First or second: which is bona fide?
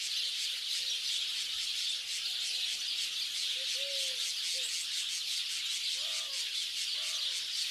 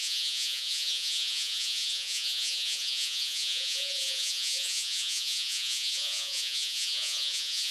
first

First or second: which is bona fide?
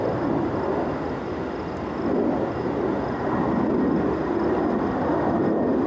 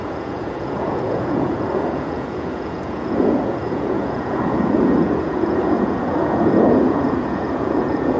first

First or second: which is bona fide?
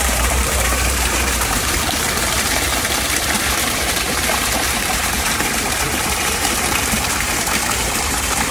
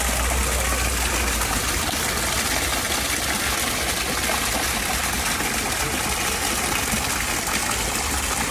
second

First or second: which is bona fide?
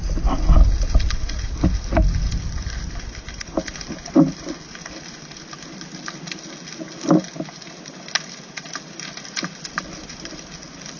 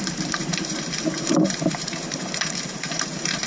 first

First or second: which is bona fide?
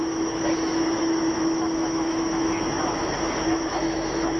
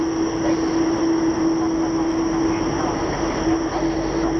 second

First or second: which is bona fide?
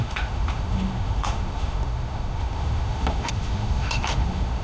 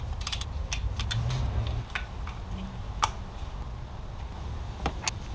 second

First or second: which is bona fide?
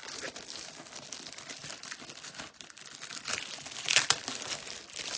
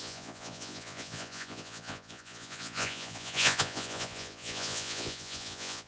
first